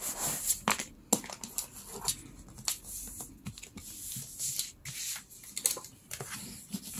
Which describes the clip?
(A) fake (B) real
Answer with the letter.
B